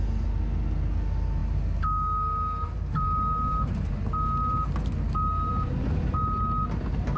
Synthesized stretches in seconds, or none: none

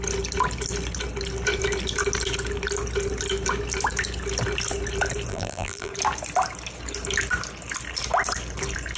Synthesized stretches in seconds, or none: 5.3-5.9 (vocoder, BigVGAN v2)

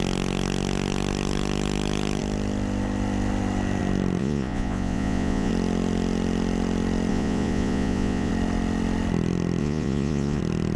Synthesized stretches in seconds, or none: 4.2-5.5 (vocoder, Vocos); 7.1-8.3; 9.6-10.4

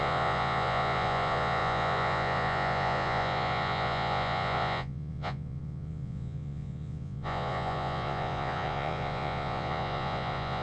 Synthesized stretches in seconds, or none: 0.0-10.6 (vocoder, Vocos)